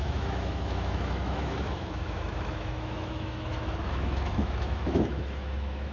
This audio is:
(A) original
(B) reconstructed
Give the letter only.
B